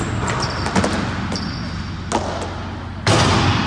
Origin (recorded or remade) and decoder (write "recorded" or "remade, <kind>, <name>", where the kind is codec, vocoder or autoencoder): recorded